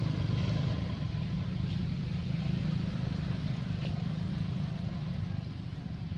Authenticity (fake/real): fake